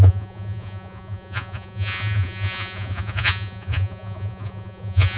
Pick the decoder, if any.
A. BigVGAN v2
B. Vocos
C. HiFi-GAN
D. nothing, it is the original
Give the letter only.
B